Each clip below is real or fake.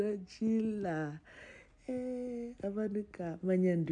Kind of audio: real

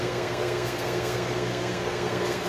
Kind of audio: fake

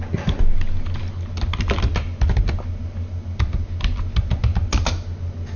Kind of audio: real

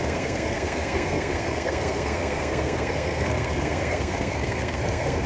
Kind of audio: fake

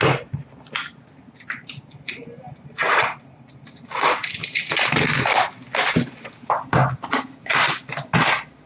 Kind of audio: real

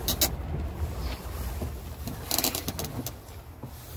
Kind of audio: real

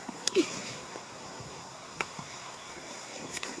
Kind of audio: fake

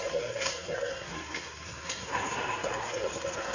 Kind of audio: fake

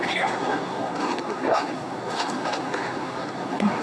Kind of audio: fake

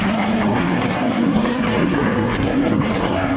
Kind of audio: fake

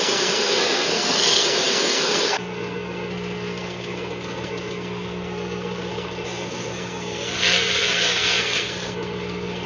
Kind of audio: fake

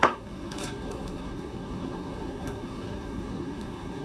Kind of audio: fake